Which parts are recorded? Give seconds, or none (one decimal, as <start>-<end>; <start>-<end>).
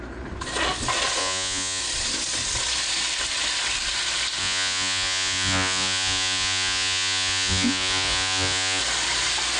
0.0-1.2; 1.8-4.4; 8.8-9.6